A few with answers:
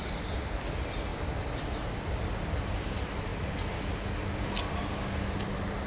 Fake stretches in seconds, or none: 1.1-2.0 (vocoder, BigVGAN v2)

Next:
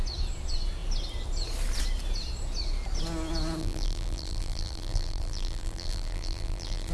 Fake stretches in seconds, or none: 3.6-6.9 (vocoder, BigVGAN v2)

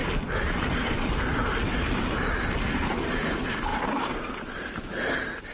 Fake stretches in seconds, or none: 3.7-4.7 (vocoder, BigVGAN v2)

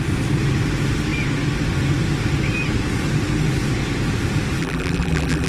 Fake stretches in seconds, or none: 4.6-5.5 (vocoder, BigVGAN v2)